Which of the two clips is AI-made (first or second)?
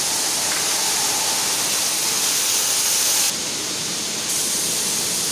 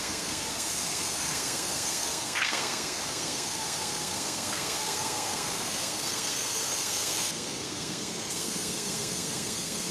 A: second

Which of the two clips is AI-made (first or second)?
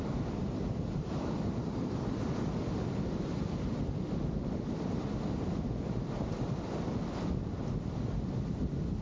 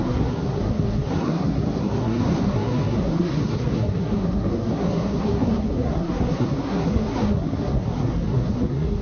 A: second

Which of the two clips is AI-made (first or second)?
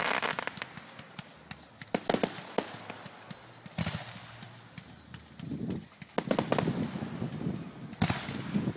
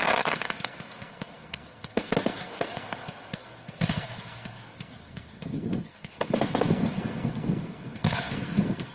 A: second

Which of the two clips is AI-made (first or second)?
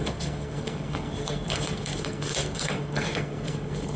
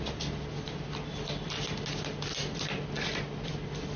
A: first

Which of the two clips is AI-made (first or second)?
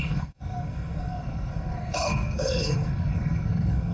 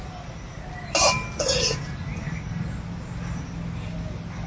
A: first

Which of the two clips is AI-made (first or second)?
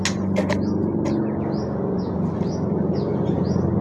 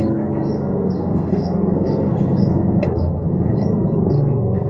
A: second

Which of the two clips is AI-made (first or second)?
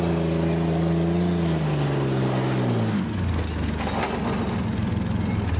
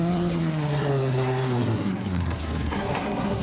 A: second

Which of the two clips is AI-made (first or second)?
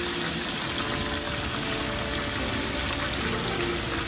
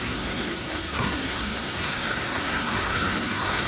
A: second